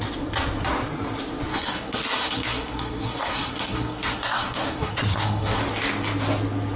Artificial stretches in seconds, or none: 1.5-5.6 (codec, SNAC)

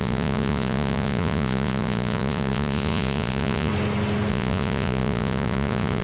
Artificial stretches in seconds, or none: 0.0-3.7 (vocoder, Vocos); 4.3-6.0

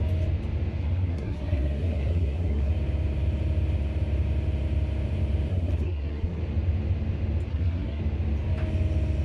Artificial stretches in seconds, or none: 0.8-2.7 (codec, SNAC); 5.5-6.4; 7.5-8.0

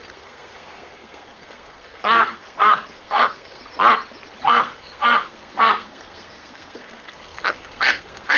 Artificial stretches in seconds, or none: 0.0-3.6 (codec, SNAC); 4.4-8.4

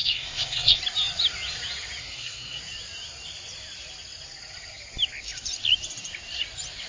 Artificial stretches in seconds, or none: 0.0-0.8 (codec, SNAC); 2.0-2.6

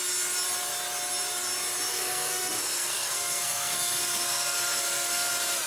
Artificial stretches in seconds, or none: 1.9-5.3 (codec, SNAC)